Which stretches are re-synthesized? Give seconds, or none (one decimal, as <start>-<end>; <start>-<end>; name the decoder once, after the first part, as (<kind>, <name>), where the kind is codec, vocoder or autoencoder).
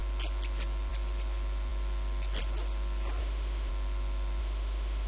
3.2-3.7 (autoencoder, DAC-VAE); 4.4-5.1